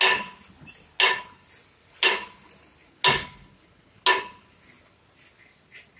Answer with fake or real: real